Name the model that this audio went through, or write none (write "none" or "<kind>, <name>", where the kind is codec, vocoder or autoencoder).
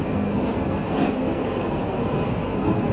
codec, SNAC